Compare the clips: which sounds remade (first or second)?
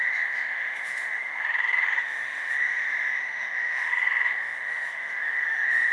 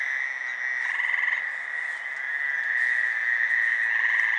first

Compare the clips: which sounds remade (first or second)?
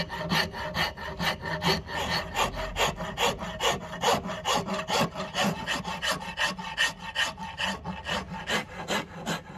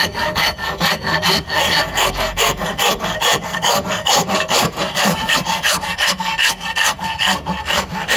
second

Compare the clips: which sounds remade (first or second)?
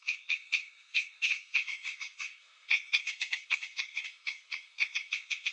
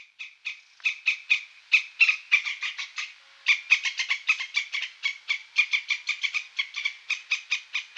first